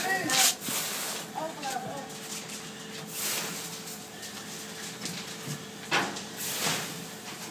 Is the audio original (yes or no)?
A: yes